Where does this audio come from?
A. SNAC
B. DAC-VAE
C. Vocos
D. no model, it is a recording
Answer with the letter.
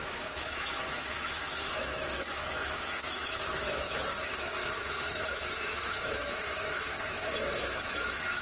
B